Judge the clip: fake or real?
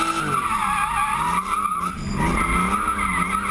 real